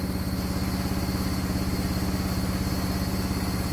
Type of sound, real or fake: real